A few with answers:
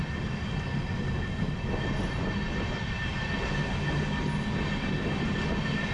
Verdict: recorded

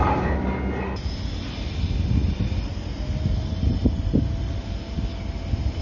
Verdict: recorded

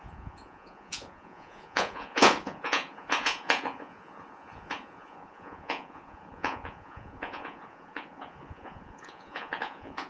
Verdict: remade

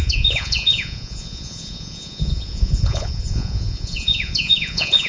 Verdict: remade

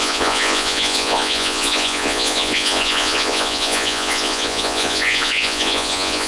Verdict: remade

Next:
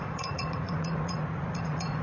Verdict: remade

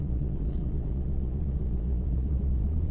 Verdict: remade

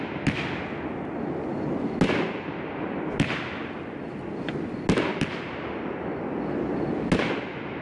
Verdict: recorded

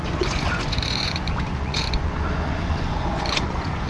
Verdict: remade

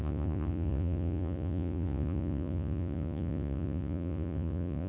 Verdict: remade